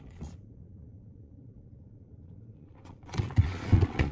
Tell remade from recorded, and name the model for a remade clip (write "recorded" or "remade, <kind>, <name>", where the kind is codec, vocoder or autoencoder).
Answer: remade, vocoder, Vocos